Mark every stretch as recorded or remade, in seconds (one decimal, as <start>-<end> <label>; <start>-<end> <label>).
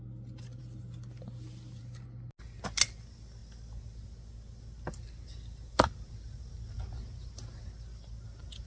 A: 0.0-8.7 recorded